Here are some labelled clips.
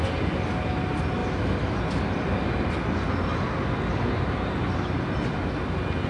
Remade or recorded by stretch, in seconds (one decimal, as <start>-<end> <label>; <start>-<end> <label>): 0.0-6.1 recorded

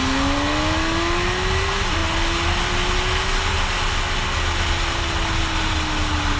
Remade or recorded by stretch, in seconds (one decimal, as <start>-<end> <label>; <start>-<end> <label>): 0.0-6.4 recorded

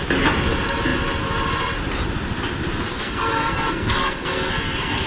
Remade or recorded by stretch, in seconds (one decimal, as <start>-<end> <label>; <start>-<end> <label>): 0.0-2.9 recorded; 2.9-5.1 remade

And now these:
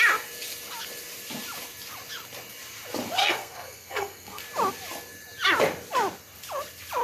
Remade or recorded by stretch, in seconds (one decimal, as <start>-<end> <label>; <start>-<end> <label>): 0.0-3.2 recorded; 3.2-4.4 remade; 4.4-7.0 recorded

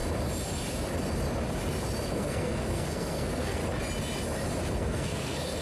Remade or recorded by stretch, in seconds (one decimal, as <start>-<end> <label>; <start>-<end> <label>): 0.0-2.1 recorded; 2.1-3.6 remade; 3.6-4.7 recorded; 4.7-5.6 remade

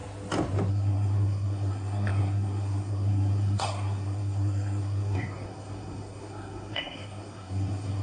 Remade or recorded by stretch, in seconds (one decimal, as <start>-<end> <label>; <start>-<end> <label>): 0.0-0.7 recorded; 0.7-8.0 remade

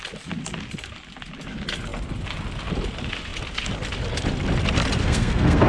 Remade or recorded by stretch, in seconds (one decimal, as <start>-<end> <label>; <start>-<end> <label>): 0.0-5.0 recorded; 5.0-5.7 remade